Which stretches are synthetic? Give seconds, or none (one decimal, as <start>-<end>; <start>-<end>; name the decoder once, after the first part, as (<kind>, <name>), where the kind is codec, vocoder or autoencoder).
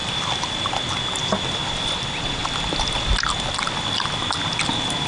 0.0-0.7 (vocoder, BigVGAN v2)